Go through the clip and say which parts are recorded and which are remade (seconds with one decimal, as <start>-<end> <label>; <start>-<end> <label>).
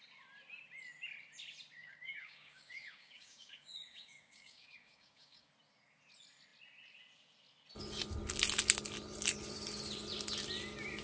0.0-1.8 recorded; 1.8-5.5 remade; 5.5-11.0 recorded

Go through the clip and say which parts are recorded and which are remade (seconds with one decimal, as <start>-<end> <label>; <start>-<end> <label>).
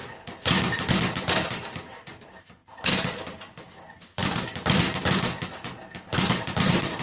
0.0-7.0 recorded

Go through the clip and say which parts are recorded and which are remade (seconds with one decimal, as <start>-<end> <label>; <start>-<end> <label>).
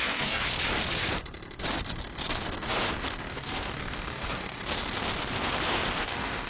0.0-0.4 remade; 0.4-3.3 recorded; 3.3-4.6 remade; 4.6-6.0 recorded; 6.0-6.5 remade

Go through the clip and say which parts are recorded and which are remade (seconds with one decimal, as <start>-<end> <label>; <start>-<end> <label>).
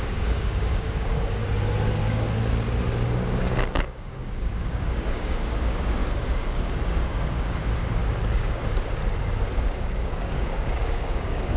0.0-1.4 remade; 1.4-3.4 recorded; 3.4-9.0 remade; 9.0-9.6 recorded; 9.6-11.6 remade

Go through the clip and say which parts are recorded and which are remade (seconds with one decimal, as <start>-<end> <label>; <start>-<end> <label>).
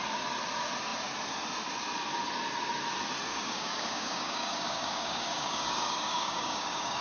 0.0-3.3 recorded; 3.3-7.0 remade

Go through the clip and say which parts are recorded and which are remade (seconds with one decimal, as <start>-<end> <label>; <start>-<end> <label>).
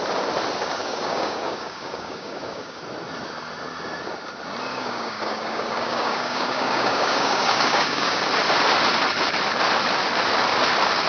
0.0-0.8 recorded; 0.8-2.8 remade; 2.8-4.7 recorded; 4.7-8.2 remade; 8.2-11.1 recorded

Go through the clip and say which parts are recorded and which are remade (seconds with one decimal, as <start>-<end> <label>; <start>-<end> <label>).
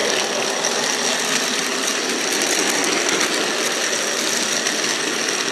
0.0-5.5 recorded